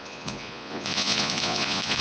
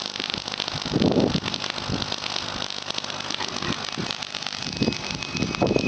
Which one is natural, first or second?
second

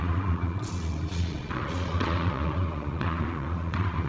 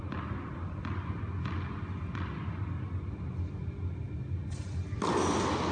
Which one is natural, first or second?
second